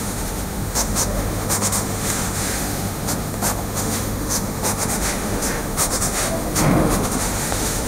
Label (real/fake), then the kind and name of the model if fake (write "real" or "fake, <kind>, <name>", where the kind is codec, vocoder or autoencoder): fake, autoencoder, DAC-VAE